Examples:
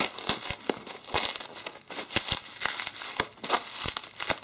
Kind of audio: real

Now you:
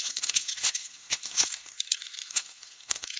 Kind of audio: fake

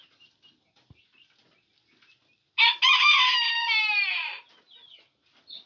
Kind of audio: real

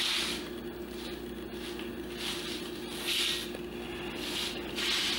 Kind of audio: real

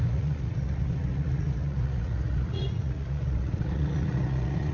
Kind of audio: fake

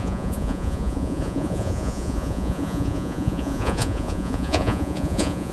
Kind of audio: fake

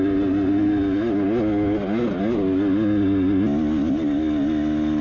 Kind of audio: real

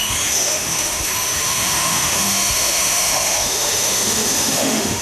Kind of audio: fake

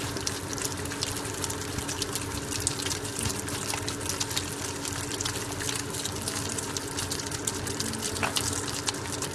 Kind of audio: real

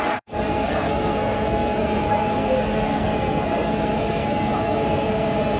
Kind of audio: fake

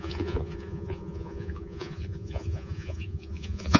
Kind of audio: fake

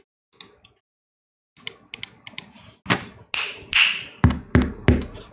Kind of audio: real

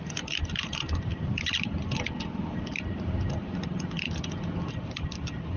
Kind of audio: fake